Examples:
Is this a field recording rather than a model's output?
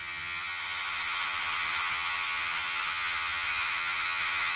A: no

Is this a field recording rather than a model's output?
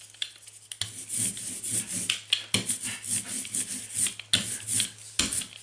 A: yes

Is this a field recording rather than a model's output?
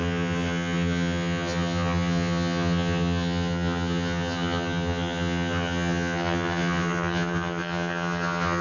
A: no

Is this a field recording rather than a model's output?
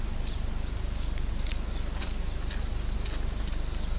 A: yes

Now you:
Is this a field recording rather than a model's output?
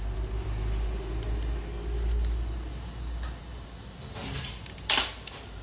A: yes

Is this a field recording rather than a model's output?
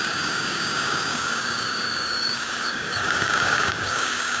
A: no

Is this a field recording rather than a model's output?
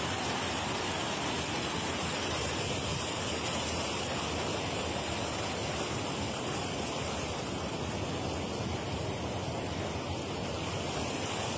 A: yes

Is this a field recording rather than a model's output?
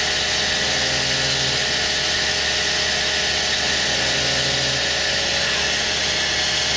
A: yes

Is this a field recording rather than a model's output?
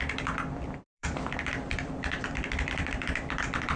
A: no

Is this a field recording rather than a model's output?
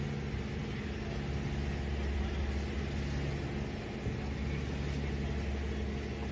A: yes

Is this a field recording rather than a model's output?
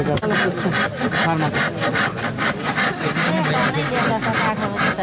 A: yes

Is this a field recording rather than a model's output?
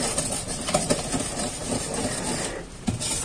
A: yes